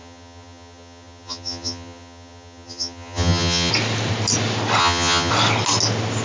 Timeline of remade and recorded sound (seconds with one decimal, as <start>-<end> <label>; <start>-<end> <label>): 0.0-3.7 remade; 3.7-4.8 recorded; 4.8-5.3 remade; 5.3-6.2 recorded